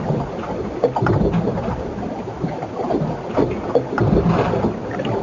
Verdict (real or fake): real